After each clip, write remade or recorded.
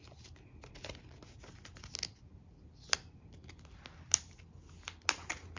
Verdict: recorded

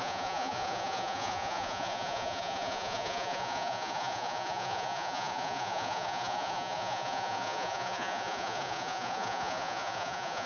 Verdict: remade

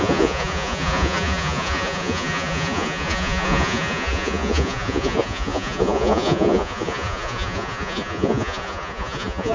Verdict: remade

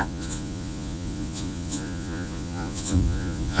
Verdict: remade